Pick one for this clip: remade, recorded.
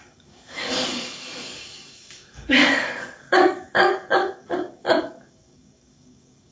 remade